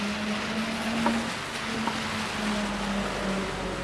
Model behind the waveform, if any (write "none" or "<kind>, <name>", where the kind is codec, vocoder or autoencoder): none